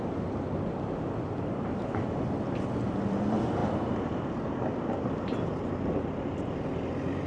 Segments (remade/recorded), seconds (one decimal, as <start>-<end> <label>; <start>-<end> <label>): 0.0-3.6 recorded; 3.6-5.6 remade; 5.6-7.3 recorded

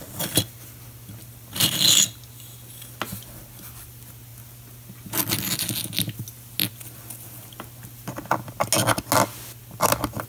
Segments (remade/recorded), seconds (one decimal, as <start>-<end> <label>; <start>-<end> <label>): 0.0-1.2 recorded; 1.2-1.8 remade; 1.8-10.3 recorded

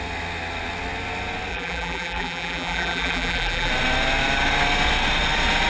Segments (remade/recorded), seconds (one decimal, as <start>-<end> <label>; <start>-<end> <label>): 0.0-1.5 recorded; 1.5-3.7 remade; 3.7-5.7 recorded

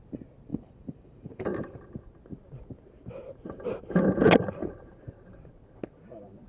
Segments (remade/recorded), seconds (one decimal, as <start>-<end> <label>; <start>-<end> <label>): 0.0-0.5 recorded; 0.5-1.6 remade; 1.6-6.5 recorded

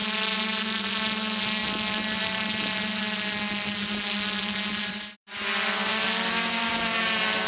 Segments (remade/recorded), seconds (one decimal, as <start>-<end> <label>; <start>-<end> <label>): 0.0-0.6 remade; 0.6-4.8 recorded; 4.8-5.9 remade; 5.9-7.5 recorded

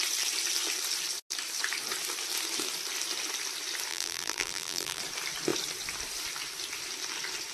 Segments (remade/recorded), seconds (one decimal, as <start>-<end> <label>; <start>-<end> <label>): 0.0-3.9 recorded; 3.9-5.0 remade; 5.0-7.5 recorded